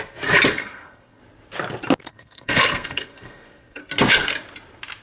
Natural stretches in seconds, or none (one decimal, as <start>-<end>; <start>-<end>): 0.0-0.5; 1.2-2.1; 3.8-5.0